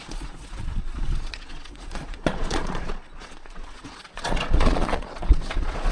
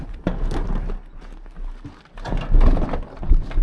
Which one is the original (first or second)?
second